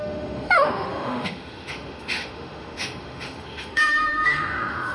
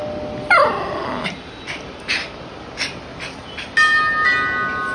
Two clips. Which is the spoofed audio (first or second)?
first